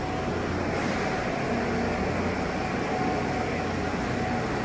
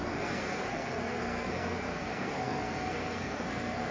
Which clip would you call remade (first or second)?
second